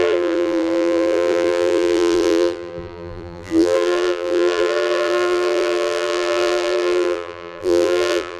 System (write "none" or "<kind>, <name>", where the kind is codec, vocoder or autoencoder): vocoder, BigVGAN v2